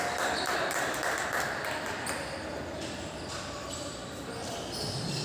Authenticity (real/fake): real